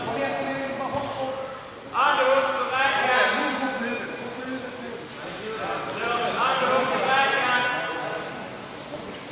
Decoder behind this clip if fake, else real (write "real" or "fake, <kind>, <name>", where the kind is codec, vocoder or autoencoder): real